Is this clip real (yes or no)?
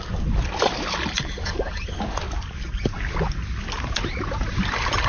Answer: yes